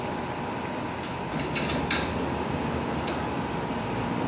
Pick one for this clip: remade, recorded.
recorded